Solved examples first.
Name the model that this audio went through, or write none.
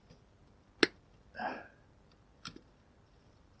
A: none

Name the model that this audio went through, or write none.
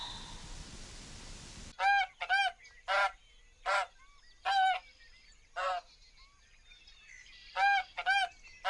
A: none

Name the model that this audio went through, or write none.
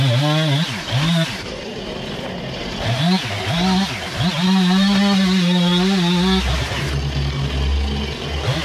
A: none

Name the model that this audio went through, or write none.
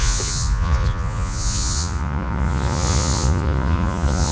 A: vocoder, Vocos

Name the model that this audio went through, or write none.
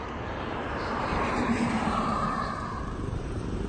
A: vocoder, BigVGAN v2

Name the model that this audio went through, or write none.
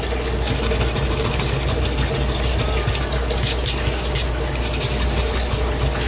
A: none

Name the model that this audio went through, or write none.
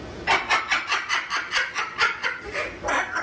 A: none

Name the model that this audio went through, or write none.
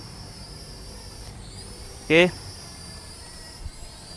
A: vocoder, BigVGAN v2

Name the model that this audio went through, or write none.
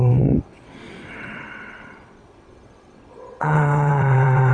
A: vocoder, WaveNeXt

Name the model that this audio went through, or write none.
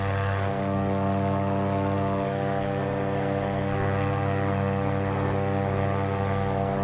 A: codec, SNAC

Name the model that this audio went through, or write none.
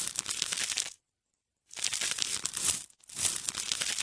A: vocoder, BigVGAN v2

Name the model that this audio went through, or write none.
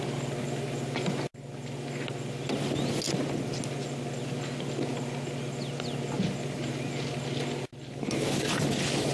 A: none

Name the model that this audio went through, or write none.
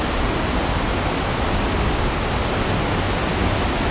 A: none